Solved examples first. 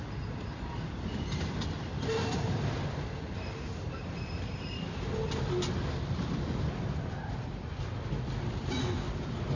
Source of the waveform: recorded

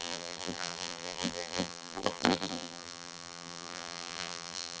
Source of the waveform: remade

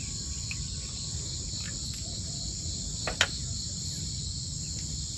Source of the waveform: recorded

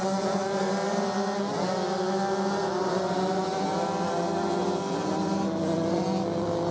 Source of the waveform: recorded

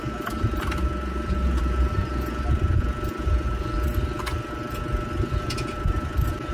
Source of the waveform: recorded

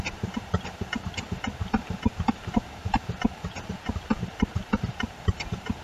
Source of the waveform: remade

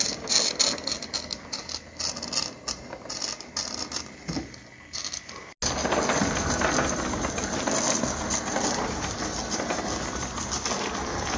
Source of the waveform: recorded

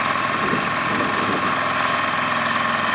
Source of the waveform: recorded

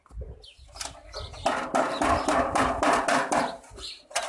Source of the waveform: recorded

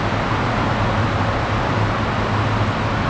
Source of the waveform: recorded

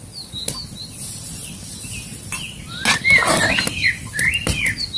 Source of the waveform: recorded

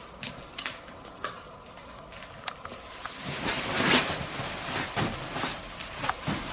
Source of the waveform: recorded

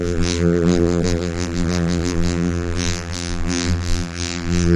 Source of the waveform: remade